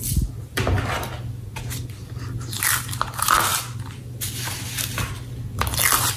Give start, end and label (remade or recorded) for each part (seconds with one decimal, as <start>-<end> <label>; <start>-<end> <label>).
0.0-6.2 recorded